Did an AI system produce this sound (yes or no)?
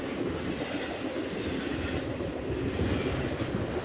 no